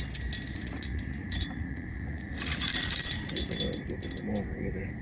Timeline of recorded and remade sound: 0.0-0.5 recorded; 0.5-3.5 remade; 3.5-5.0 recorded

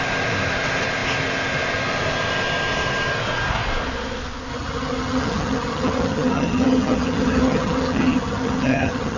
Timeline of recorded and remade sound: 0.0-4.5 recorded; 4.5-9.2 remade

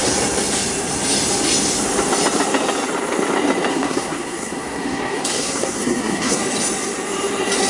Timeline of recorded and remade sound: 0.0-3.7 recorded; 3.7-6.4 remade; 6.4-7.7 recorded

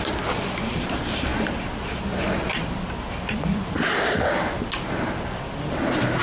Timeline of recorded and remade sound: 0.0-6.2 recorded

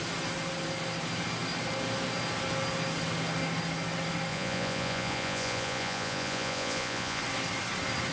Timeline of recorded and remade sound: 0.0-4.3 recorded; 4.3-7.2 remade; 7.2-8.1 recorded